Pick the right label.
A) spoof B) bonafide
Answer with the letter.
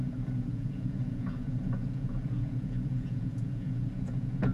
A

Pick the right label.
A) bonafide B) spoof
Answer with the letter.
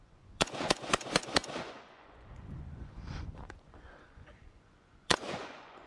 B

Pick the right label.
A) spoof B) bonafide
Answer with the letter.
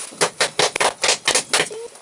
B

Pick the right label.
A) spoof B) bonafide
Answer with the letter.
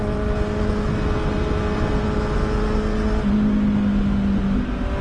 B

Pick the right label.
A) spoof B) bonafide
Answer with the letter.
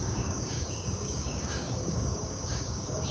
A